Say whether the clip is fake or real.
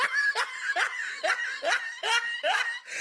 real